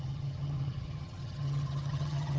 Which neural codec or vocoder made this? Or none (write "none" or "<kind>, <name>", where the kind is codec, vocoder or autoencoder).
vocoder, HiFi-GAN